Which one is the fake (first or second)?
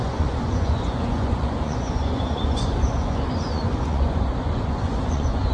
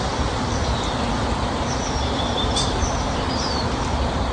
first